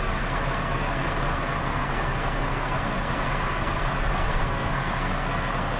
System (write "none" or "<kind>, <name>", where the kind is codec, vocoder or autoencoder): codec, SNAC